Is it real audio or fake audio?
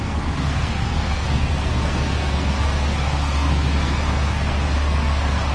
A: fake